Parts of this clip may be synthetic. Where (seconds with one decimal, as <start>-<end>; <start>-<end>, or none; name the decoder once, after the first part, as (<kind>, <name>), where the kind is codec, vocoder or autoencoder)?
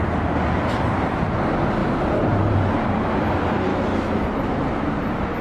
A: 3.7-4.3 (autoencoder, DAC-VAE)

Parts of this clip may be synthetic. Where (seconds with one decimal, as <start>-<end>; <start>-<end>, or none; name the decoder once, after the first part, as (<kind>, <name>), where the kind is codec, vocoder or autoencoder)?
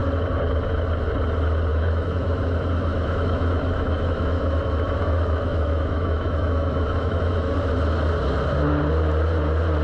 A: 1.7-2.4 (autoencoder, DAC-VAE); 2.9-7.5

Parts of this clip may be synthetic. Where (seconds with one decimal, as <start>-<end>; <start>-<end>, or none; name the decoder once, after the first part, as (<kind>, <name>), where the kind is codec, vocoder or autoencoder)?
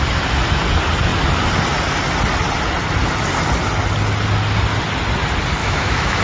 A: 5.6-6.2 (autoencoder, DAC-VAE)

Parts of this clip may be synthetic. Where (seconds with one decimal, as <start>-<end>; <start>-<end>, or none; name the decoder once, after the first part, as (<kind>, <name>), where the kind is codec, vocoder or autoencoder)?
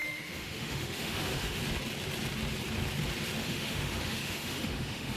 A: 0.0-1.6 (autoencoder, DAC-VAE); 3.4-5.2